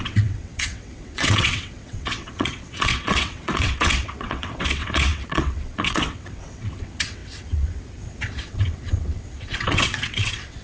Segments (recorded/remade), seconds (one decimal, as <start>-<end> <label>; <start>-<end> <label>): 0.0-10.6 remade